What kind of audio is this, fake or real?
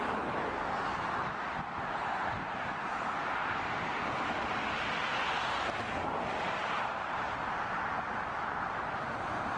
real